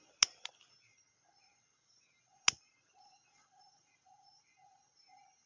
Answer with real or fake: real